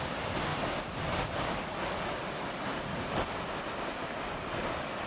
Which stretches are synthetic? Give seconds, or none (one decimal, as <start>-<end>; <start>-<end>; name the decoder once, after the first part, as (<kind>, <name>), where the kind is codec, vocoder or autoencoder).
none